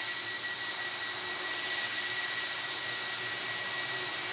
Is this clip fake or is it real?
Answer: real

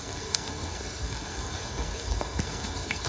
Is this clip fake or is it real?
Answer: fake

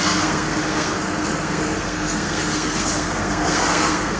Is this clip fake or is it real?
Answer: fake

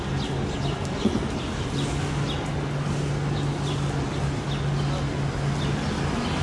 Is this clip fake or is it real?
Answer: real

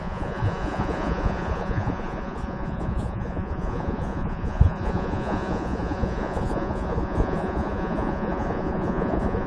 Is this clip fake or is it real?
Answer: fake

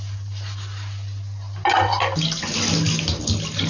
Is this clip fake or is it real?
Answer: real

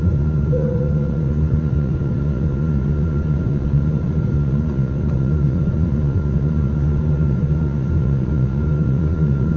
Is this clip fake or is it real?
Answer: fake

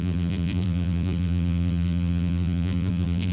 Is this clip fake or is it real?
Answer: fake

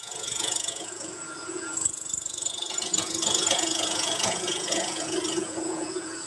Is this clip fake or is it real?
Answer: fake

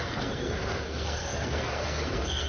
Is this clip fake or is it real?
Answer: fake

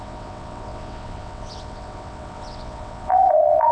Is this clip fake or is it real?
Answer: fake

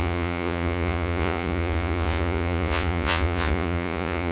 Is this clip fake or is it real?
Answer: fake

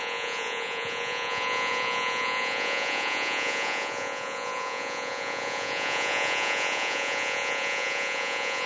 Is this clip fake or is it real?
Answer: fake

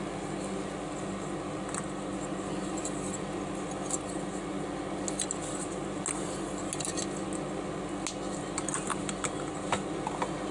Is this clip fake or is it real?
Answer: real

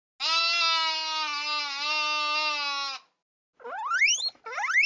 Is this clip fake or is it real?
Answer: real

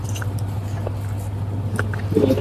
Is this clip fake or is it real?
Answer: real